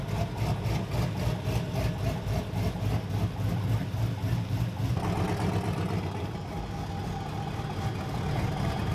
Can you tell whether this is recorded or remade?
recorded